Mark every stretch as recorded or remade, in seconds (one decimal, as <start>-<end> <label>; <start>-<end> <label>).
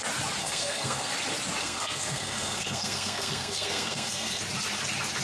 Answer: 0.0-0.4 recorded; 0.4-1.1 remade; 1.1-1.6 recorded; 1.6-4.4 remade; 4.4-5.2 recorded